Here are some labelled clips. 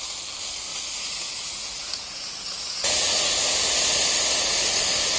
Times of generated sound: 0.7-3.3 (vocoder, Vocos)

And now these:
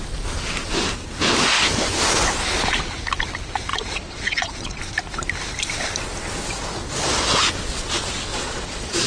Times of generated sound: 3.7-4.8 (vocoder, Vocos); 8.3-9.1

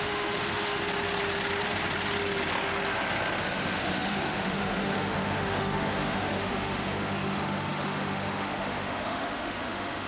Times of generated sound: 0.0-0.8 (autoencoder, DAC-VAE); 3.4-10.1

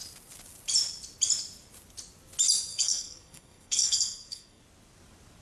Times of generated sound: 2.7-4.6 (codec, SNAC)

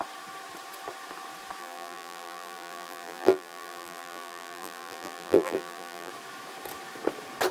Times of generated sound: 1.6-6.1 (vocoder, BigVGAN v2)

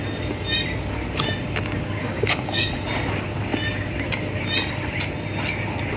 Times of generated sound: 2.0-2.7 (codec, DAC)